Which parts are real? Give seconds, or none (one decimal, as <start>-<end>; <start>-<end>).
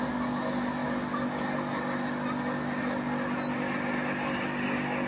0.0-5.1